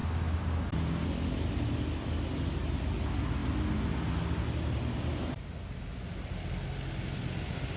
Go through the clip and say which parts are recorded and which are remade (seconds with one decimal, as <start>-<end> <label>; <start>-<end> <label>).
0.0-7.8 recorded